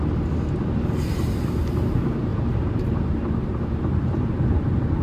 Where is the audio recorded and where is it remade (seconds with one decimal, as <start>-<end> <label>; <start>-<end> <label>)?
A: 0.0-2.3 recorded; 2.3-5.0 remade